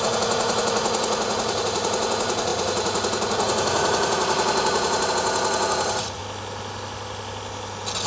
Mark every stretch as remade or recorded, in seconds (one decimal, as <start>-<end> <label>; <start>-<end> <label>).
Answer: 0.0-6.2 remade; 6.2-8.1 recorded